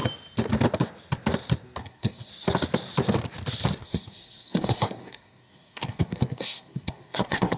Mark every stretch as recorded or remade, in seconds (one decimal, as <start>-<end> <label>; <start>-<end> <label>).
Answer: 0.0-1.8 recorded; 1.8-2.3 remade; 2.3-3.8 recorded; 3.8-7.6 remade